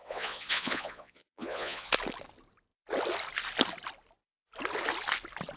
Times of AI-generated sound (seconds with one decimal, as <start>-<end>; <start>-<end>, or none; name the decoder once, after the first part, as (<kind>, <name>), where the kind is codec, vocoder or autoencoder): 0.0-1.9 (vocoder, Vocos)